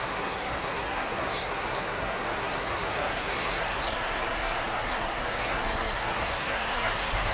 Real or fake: fake